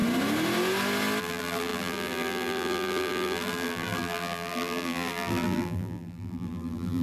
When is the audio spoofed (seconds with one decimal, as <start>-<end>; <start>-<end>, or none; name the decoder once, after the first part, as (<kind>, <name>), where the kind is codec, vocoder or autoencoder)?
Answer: 1.2-7.0 (vocoder, BigVGAN v2)